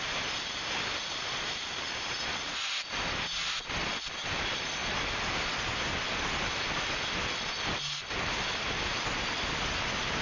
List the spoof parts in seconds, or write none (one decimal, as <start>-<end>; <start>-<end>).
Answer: none

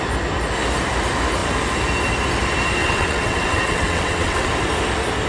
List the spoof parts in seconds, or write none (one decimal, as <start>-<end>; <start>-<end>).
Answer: 2.8-4.5

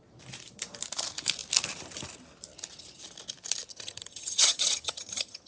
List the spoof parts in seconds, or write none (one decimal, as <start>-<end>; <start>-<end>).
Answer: 3.7-5.5

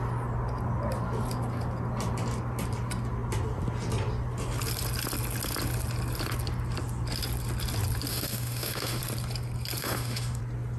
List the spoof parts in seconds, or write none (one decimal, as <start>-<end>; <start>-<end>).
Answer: 8.1-9.0; 9.8-10.4